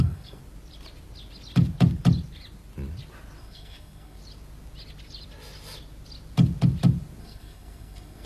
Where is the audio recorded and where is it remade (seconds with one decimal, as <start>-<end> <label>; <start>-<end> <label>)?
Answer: 0.0-0.4 remade; 0.4-3.4 recorded; 3.4-4.2 remade; 4.2-7.2 recorded; 7.2-8.3 remade